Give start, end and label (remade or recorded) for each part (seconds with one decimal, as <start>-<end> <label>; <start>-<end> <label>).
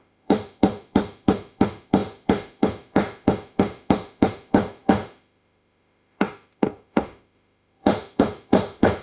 0.0-9.0 remade